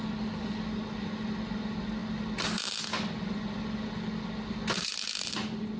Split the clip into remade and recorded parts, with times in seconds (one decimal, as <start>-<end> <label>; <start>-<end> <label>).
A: 0.0-5.8 recorded